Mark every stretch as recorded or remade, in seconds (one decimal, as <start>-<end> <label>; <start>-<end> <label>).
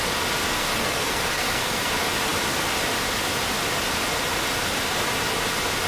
0.0-0.5 recorded; 0.5-1.9 remade; 1.9-5.9 recorded